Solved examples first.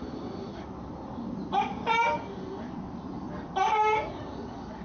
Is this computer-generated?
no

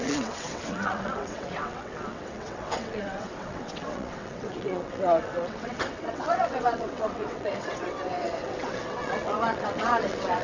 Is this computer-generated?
yes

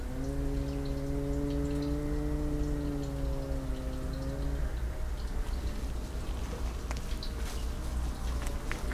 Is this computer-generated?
no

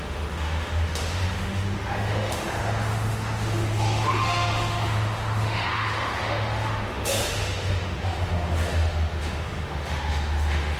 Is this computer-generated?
yes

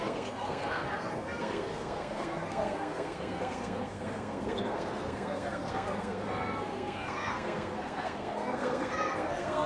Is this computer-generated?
yes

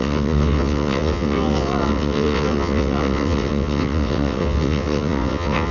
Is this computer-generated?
yes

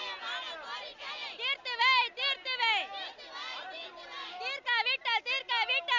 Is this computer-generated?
no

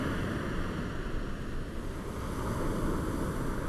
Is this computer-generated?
no